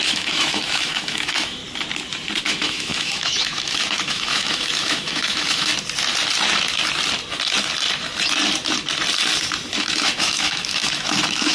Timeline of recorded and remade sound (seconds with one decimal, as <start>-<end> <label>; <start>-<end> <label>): 0.0-1.6 remade; 1.6-2.4 recorded; 2.4-5.7 remade; 5.7-9.7 recorded; 9.7-11.5 remade